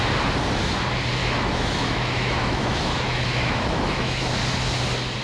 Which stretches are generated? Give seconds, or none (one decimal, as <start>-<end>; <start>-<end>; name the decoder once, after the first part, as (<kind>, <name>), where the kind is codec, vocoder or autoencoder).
1.2-4.3 (autoencoder, DAC-VAE)

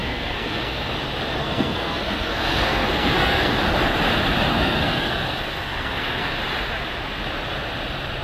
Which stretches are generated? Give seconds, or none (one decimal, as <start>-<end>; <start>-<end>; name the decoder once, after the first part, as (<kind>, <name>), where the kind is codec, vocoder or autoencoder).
0.0-0.9 (codec, SNAC); 1.4-3.5; 4.5-6.4

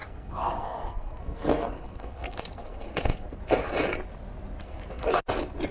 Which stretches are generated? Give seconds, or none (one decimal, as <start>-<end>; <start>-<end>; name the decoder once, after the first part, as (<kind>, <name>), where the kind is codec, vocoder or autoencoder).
0.0-3.4 (codec, SNAC); 4.6-5.2

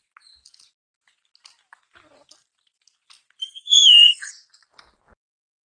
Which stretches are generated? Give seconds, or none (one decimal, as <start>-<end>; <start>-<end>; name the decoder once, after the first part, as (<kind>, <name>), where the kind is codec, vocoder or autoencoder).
3.4-4.3 (codec, SNAC)

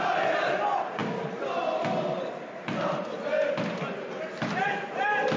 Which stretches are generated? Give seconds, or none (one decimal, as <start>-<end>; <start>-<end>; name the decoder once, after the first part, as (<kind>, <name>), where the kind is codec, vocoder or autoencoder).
none

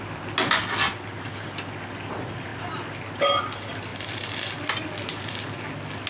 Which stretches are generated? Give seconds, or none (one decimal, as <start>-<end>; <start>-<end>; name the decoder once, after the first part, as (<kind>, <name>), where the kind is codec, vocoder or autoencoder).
none